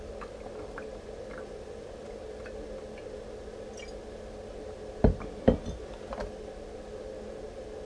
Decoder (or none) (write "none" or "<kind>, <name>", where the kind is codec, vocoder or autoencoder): none